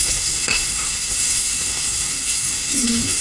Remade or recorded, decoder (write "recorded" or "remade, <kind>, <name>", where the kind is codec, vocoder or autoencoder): remade, codec, SNAC